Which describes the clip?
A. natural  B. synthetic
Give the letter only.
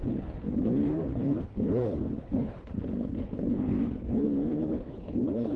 B